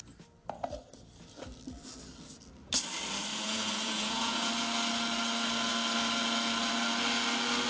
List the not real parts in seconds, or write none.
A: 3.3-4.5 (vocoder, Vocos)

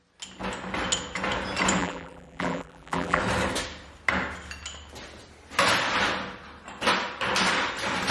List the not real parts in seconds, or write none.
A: 1.8-3.2 (vocoder, BigVGAN v2)

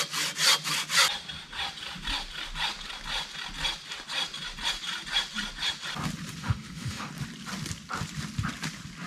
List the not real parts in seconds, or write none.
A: 6.4-7.1 (autoencoder, DAC-VAE)

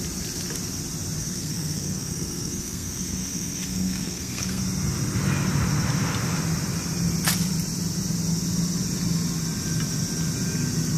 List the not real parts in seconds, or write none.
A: 1.2-4.6 (codec, SNAC)

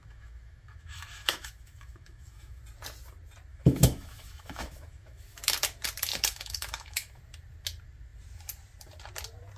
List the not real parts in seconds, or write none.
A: 0.0-2.6 (autoencoder, DAC-VAE); 3.5-5.4; 6.1-7.2

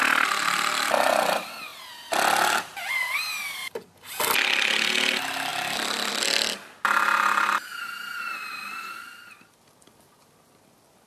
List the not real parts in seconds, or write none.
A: 8.5-9.3 (vocoder, BigVGAN v2)

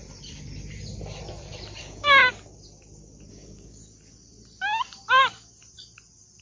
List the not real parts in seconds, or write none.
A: 1.8-2.2 (codec, DAC); 3.3-3.8

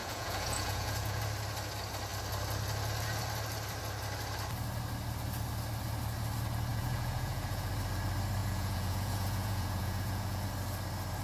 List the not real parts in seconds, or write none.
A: 0.0-1.2 (vocoder, Vocos); 6.7-7.7; 8.4-10.5